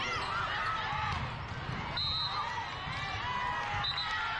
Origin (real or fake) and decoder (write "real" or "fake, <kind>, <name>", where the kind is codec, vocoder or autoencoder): real